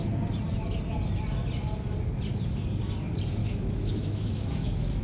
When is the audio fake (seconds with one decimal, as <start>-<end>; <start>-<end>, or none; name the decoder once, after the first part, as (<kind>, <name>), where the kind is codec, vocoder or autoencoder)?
3.4-5.0 (autoencoder, DAC-VAE)